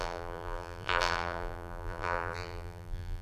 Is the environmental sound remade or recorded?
remade